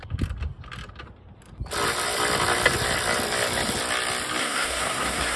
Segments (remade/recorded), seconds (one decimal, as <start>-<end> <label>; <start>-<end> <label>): 0.0-4.4 recorded; 4.4-5.4 remade